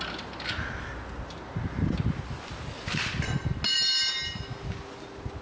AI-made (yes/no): no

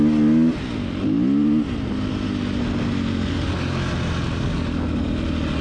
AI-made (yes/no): no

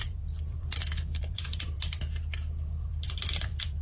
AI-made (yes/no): yes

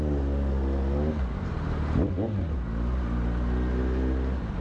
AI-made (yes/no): no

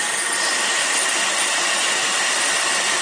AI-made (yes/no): no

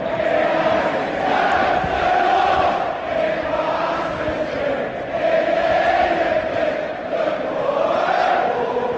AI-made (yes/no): no